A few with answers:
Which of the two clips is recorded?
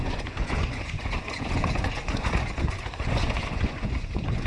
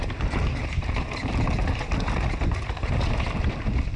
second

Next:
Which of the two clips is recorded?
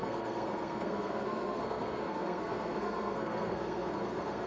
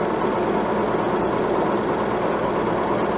second